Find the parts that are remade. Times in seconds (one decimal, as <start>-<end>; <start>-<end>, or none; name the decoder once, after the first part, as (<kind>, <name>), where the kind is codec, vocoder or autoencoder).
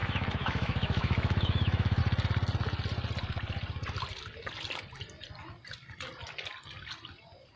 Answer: 0.0-2.0 (autoencoder, DAC-VAE)